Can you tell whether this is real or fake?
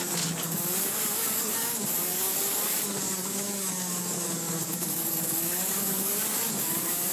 fake